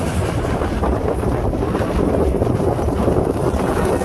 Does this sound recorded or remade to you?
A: recorded